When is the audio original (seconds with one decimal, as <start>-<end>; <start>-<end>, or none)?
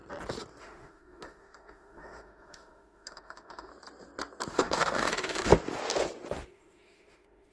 0.0-0.6; 3.7-4.5; 5.5-6.5